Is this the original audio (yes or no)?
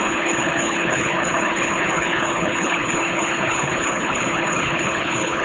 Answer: no